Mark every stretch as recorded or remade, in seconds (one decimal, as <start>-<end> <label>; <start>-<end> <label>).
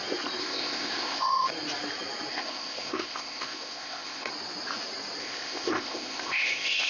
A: 0.0-0.4 recorded; 0.4-1.5 remade; 1.5-2.3 recorded; 2.3-4.3 remade; 4.3-5.2 recorded; 5.2-6.9 remade